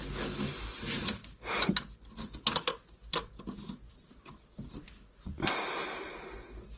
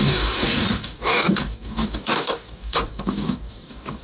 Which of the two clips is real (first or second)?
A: first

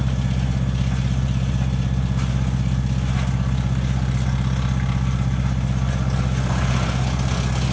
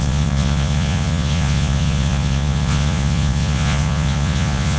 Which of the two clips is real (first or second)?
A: first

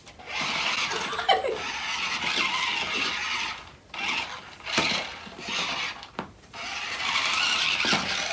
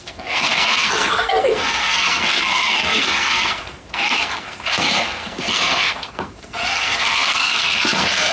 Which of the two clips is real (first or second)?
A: first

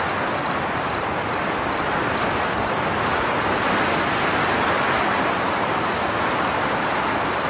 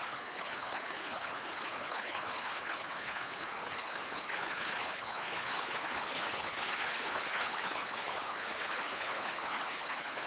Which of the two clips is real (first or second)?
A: first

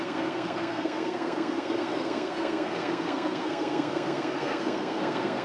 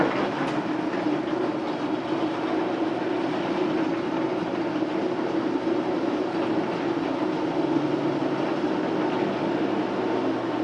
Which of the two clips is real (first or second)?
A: second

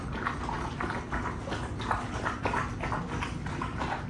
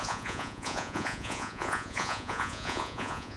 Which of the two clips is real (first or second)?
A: first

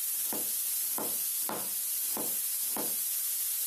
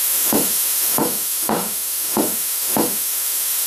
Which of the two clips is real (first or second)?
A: first